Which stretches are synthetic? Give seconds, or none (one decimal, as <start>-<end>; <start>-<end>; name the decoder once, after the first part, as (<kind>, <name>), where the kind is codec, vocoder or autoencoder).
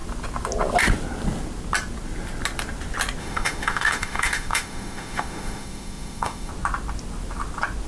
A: 3.2-6.5 (autoencoder, DAC-VAE)